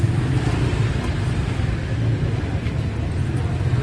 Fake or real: real